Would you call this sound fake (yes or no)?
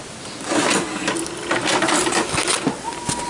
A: no